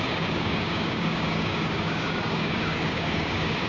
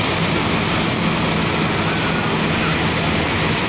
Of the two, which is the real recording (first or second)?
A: second